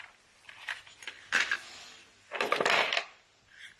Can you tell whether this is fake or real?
real